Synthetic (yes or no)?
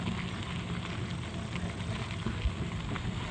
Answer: no